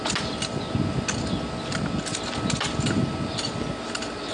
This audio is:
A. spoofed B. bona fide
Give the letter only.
B